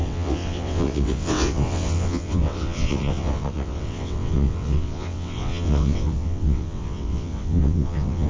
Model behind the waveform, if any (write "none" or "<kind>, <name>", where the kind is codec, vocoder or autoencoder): vocoder, WaveNeXt